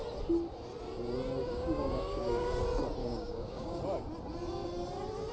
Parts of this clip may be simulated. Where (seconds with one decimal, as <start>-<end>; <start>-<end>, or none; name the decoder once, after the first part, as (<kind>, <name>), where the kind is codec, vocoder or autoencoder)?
1.4-2.6 (codec, DAC); 3.0-3.8